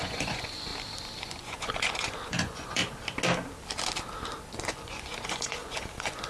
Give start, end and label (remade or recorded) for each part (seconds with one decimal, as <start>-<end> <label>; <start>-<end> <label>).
0.0-0.7 remade; 0.7-1.2 recorded; 1.2-2.8 remade; 2.8-4.7 recorded; 4.7-6.3 remade